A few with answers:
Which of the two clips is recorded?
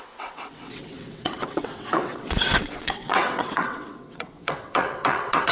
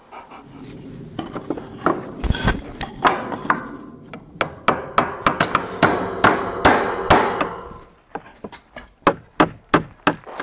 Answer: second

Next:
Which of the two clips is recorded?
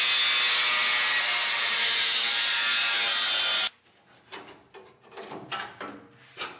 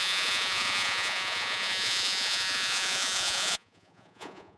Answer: first